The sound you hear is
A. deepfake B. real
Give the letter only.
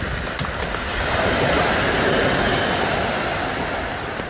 B